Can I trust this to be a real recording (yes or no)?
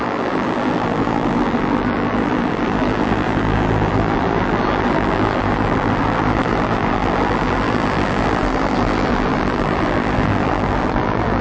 no